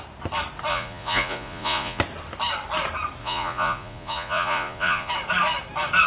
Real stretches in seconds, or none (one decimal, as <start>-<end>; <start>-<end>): 0.0-0.7; 2.0-3.2; 5.1-6.1